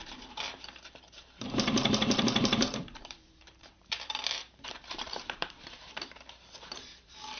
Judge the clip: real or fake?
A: fake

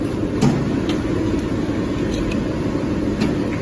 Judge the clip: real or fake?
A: real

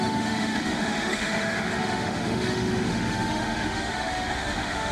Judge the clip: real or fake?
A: fake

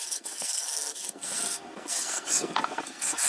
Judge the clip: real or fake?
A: fake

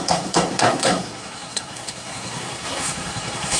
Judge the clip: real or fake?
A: fake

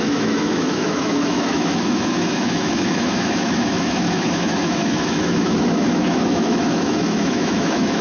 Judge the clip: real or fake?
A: fake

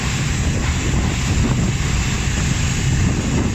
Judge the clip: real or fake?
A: real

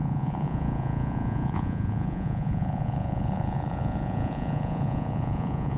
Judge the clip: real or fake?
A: fake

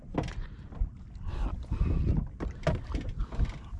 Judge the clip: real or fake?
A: real